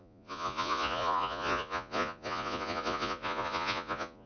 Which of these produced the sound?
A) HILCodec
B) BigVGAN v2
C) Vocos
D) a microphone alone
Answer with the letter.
C